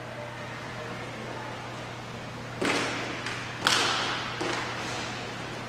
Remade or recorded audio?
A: recorded